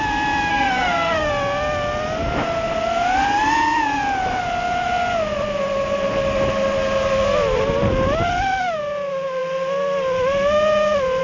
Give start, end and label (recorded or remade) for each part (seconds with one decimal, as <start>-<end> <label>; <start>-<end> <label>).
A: 0.0-0.5 recorded; 0.5-1.3 remade; 1.3-11.2 recorded